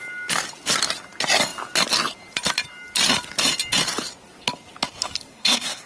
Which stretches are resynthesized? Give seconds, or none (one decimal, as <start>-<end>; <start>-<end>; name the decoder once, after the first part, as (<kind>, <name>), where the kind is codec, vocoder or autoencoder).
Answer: 5.3-5.9 (codec, SNAC)